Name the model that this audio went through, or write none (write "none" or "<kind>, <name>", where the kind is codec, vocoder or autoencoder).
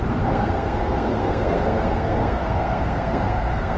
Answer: codec, SNAC